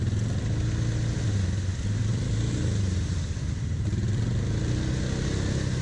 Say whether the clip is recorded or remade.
recorded